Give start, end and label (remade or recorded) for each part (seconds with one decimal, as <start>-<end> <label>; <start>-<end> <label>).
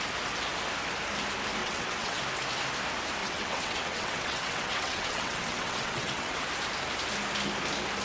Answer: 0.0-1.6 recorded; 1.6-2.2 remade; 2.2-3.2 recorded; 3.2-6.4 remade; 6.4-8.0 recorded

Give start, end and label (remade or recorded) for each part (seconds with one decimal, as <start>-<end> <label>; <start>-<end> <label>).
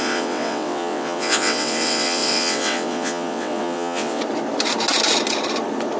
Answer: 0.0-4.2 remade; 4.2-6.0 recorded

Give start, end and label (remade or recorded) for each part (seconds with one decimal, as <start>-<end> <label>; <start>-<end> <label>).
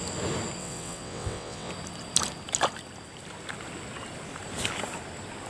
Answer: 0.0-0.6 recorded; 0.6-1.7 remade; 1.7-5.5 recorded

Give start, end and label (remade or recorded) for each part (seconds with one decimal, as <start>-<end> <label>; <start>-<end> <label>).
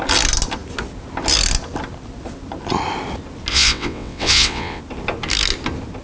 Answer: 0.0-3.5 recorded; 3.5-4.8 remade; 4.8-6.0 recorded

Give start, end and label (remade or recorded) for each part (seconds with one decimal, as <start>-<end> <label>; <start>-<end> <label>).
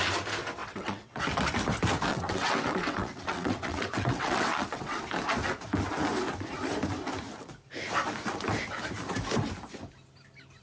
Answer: 0.0-0.6 recorded; 0.6-1.2 remade; 1.2-2.1 recorded; 2.1-5.0 remade; 5.0-10.6 recorded